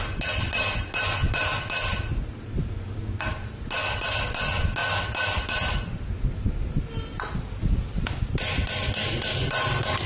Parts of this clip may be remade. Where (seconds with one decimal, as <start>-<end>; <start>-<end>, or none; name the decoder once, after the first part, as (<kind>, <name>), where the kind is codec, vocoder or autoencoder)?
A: none